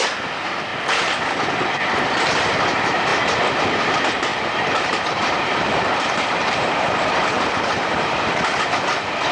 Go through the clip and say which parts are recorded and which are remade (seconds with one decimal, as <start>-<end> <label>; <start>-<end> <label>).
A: 0.0-4.3 recorded; 4.3-8.6 remade; 8.6-9.3 recorded